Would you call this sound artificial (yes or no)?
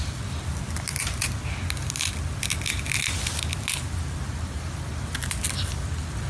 no